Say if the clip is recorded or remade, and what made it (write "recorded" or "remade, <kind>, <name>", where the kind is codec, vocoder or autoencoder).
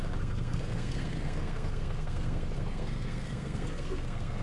remade, codec, SNAC